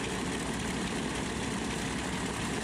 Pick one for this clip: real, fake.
real